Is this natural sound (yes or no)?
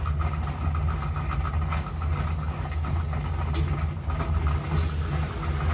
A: yes